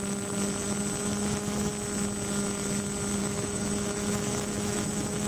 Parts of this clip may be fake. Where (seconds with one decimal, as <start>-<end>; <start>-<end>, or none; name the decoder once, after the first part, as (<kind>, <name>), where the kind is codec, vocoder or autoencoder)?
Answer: 1.0-1.7 (autoencoder, DAC-VAE); 3.2-5.3

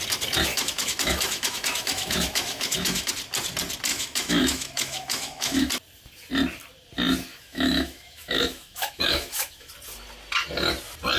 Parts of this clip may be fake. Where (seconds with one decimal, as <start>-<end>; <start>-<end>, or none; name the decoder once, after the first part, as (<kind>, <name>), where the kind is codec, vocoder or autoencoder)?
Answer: 0.5-3.1 (autoencoder, DAC-VAE); 3.9-5.7; 7.3-9.7

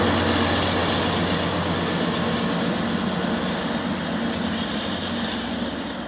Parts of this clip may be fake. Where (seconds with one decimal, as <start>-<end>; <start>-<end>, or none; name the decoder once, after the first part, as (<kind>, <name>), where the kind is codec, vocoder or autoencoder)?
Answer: none

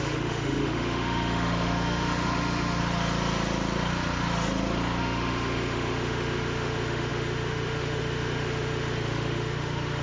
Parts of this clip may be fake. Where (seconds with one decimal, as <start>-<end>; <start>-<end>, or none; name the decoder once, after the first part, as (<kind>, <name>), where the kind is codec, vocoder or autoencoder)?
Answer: 0.0-2.8 (autoencoder, DAC-VAE); 5.0-10.0

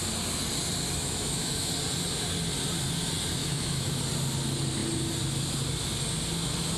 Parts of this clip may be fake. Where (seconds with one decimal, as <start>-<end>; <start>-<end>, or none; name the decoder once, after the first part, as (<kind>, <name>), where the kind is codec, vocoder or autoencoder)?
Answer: 1.0-1.7 (autoencoder, DAC-VAE); 3.4-4.0

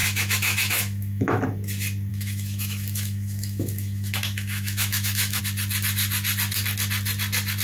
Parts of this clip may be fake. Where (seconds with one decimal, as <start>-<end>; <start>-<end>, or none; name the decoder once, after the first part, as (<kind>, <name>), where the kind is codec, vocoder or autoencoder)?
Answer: 0.0-1.4 (autoencoder, DAC-VAE); 2.1-5.4

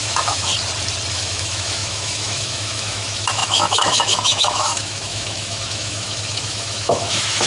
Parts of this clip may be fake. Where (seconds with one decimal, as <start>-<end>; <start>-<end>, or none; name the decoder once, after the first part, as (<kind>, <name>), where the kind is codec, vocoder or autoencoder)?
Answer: 0.0-0.5 (autoencoder, DAC-VAE); 1.1-7.5